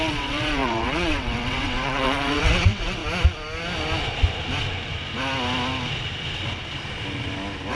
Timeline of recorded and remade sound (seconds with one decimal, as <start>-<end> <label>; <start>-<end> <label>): 0.0-3.0 remade; 3.0-7.7 recorded